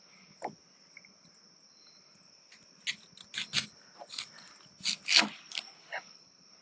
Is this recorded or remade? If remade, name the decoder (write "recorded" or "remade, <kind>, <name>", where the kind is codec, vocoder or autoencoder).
recorded